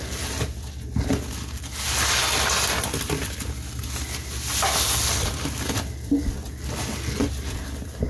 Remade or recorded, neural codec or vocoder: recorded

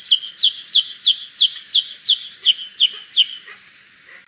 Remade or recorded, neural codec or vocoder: recorded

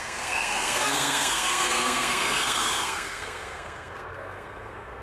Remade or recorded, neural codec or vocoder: remade, codec, SNAC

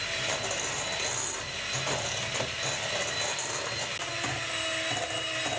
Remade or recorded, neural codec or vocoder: recorded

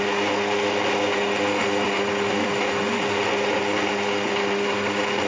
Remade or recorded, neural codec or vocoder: recorded